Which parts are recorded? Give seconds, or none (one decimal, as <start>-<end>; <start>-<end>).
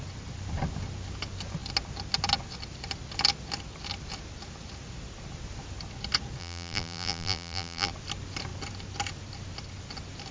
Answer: 0.0-6.4; 7.9-10.3